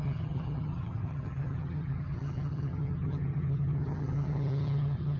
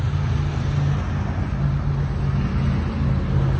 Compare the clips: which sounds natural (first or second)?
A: second